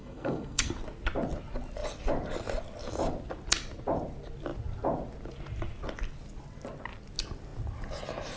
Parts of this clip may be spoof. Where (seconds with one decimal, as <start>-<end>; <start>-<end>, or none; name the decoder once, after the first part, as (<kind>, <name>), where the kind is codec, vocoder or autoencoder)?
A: 0.0-0.7 (codec, SNAC)